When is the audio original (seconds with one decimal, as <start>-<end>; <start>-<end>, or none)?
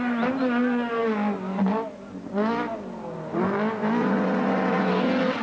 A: 0.0-4.0